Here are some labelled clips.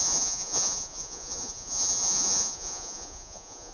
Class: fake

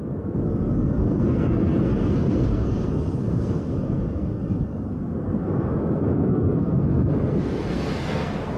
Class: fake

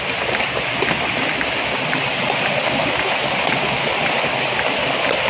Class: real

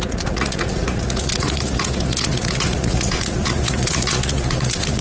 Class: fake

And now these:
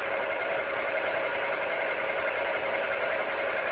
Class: real